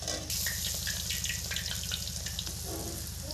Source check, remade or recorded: recorded